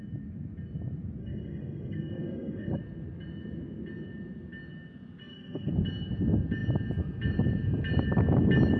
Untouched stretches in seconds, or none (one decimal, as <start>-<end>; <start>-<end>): 0.0-1.2; 2.8-5.2; 5.7-8.8

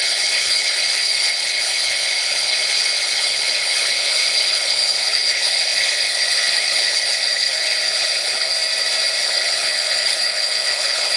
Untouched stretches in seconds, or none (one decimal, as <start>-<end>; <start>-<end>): 8.5-9.2

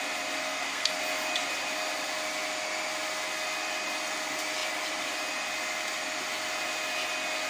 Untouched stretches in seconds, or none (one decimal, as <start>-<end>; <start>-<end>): 0.0-0.4; 0.9-7.5

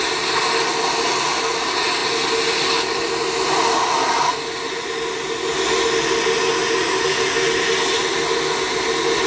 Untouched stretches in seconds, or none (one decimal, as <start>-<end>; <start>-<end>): 0.0-9.3

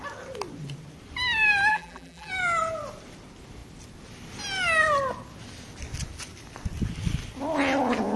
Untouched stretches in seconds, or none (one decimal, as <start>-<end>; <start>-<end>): 0.0-1.7; 2.3-8.2